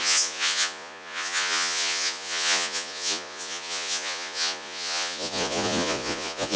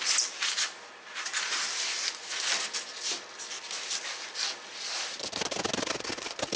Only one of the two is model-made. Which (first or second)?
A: first